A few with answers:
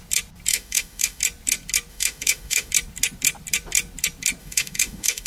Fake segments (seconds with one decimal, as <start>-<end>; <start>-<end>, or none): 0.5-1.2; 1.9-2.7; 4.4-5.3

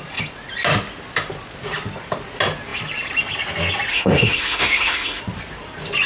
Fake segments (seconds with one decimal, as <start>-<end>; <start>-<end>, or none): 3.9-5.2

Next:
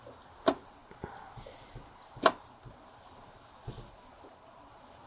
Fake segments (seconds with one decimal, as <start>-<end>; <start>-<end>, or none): none

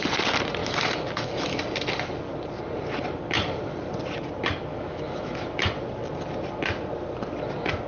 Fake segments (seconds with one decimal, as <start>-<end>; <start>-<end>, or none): 0.6-1.6; 4.7-5.7

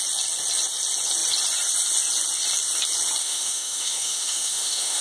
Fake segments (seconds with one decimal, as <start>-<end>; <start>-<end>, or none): 3.2-5.0

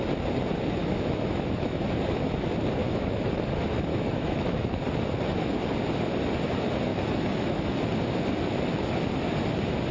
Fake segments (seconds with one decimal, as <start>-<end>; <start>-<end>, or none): 0.8-1.8; 2.8-3.3; 3.9-4.8; 6.9-7.7

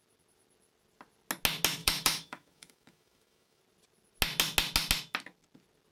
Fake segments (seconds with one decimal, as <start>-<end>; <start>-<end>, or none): 1.8-3.6